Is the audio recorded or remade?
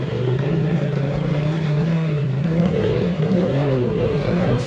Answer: remade